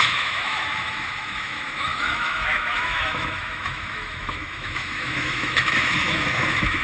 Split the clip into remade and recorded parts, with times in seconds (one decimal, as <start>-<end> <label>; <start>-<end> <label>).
0.0-6.8 remade